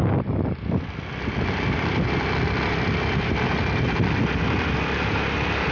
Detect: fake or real real